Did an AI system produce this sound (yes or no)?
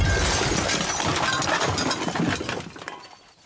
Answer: no